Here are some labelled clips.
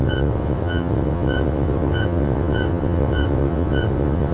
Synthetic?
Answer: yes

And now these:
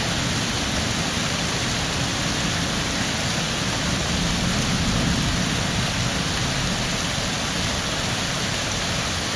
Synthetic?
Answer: no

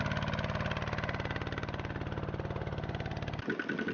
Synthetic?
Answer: no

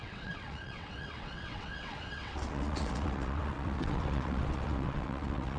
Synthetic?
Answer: yes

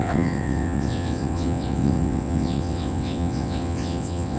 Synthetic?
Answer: yes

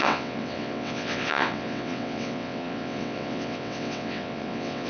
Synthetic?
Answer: yes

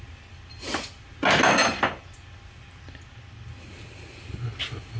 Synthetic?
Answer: no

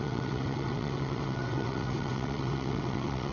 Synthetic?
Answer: yes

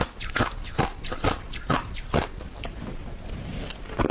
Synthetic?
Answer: no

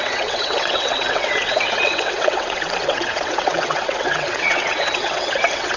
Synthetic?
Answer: yes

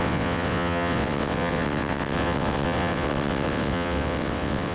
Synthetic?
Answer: yes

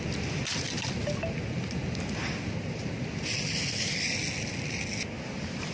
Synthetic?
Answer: no